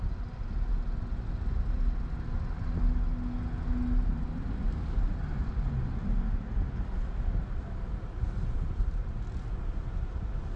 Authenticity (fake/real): real